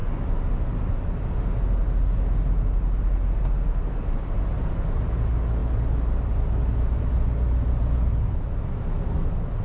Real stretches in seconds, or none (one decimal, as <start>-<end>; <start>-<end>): 0.0-9.6